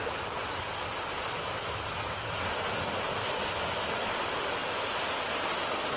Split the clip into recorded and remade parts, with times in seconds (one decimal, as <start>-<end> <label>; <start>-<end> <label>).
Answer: 0.0-3.2 recorded; 3.2-3.8 remade; 3.8-6.0 recorded